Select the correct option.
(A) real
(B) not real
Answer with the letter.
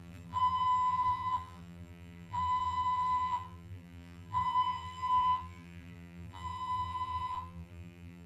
B